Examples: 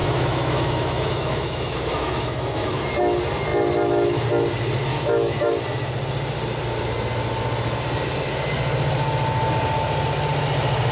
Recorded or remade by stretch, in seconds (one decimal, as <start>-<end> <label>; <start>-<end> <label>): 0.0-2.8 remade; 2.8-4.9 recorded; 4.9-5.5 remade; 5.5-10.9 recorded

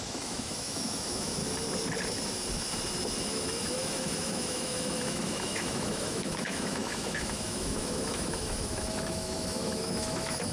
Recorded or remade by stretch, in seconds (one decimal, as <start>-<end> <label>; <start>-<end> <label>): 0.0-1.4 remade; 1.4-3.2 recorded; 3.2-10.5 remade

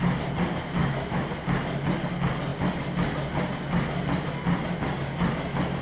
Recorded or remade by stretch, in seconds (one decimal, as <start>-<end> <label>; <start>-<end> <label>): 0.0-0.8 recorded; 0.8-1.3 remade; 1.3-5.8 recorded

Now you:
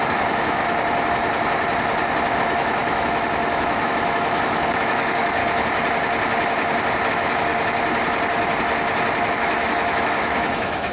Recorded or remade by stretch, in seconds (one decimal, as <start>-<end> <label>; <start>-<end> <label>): 0.0-0.6 remade; 0.6-2.4 recorded; 2.4-5.4 remade; 5.4-7.1 recorded; 7.1-7.5 remade; 7.5-9.3 recorded; 9.3-10.9 remade

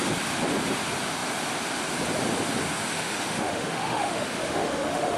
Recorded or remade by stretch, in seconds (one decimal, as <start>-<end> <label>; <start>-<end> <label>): 0.0-2.8 recorded; 2.8-5.2 remade

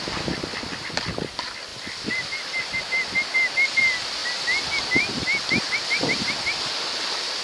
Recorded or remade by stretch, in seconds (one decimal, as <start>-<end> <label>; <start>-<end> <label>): 0.0-7.4 recorded